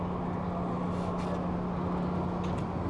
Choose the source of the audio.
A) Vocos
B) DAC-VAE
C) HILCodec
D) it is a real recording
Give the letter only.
D